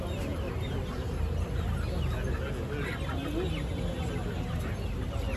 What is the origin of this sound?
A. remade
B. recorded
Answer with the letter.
B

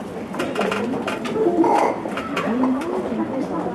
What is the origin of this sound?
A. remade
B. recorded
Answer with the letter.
B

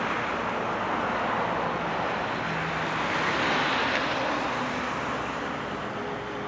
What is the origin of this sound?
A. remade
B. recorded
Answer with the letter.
B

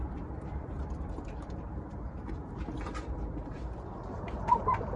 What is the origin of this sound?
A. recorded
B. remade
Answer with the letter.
B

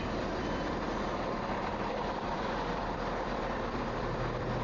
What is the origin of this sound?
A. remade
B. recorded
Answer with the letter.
A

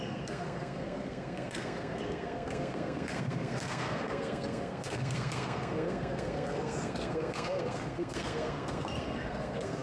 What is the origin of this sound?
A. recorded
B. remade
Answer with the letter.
B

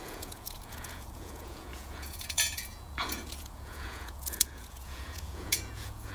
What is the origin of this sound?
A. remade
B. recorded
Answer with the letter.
A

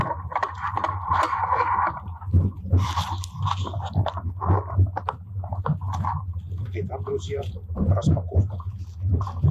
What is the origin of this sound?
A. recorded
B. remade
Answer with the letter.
B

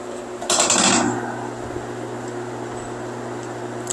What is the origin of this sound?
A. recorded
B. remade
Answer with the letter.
A